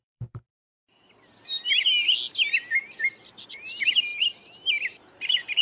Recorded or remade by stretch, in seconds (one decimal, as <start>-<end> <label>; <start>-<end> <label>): 0.0-0.5 remade; 0.5-3.5 recorded; 3.5-4.1 remade; 4.1-5.0 recorded; 5.0-5.6 remade